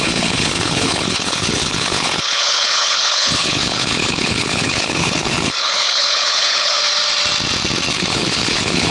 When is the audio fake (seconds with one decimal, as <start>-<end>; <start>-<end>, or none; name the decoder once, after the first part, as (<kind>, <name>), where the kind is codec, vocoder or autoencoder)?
0.0-6.8 (codec, HILCodec); 7.9-8.9